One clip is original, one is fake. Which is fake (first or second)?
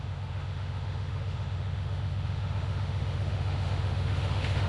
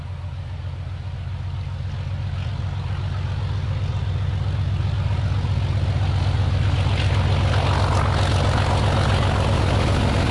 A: first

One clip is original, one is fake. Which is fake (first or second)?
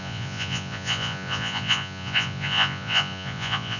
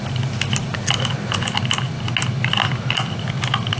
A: first